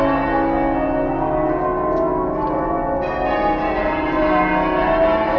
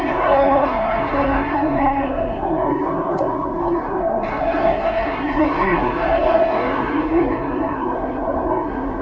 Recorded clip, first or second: first